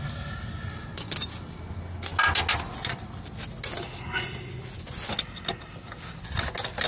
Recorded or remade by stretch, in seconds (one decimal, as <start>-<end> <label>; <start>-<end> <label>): 0.0-6.9 recorded